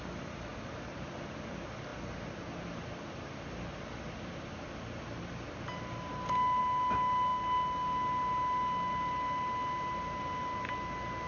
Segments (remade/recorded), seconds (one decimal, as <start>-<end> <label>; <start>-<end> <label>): 0.0-11.3 recorded